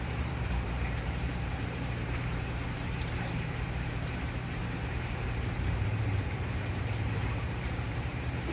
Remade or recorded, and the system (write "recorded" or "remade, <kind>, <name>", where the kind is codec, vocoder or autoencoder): remade, vocoder, BigVGAN v2